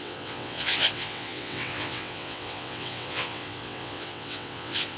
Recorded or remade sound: remade